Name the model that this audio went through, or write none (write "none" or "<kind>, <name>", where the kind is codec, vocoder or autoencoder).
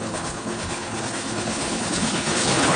codec, HILCodec